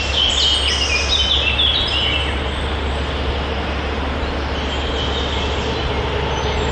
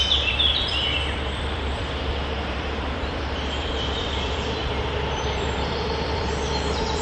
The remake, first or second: second